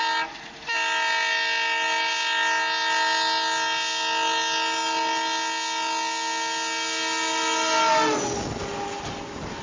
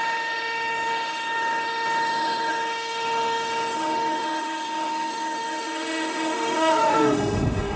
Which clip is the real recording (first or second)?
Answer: first